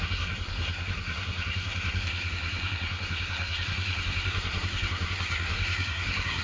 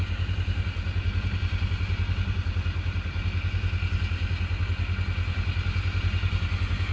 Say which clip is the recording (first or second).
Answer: second